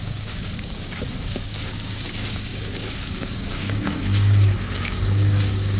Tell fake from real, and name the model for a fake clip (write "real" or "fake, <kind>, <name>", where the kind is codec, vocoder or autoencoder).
fake, codec, DAC